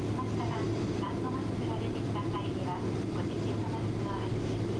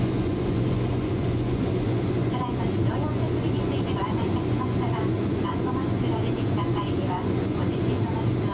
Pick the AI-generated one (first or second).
second